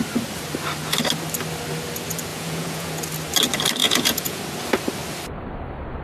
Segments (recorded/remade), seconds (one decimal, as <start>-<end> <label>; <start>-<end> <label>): 0.0-2.3 recorded; 2.3-2.9 remade; 2.9-3.8 recorded; 3.8-4.4 remade; 4.4-6.0 recorded